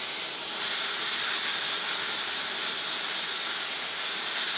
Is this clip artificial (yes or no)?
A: no